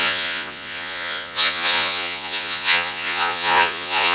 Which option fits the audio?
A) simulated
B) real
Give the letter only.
A